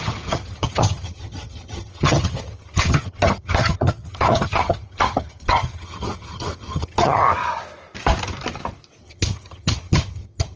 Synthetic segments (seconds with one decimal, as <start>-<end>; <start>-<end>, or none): 0.0-7.2; 9.0-10.6